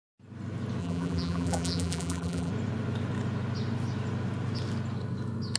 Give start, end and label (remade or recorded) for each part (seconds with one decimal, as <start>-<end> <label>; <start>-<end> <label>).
0.0-0.8 recorded; 0.8-2.5 remade; 2.5-5.6 recorded